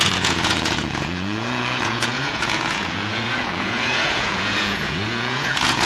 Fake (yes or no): yes